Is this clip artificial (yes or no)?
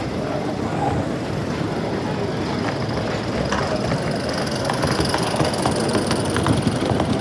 no